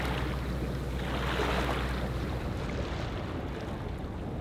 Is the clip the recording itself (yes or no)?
yes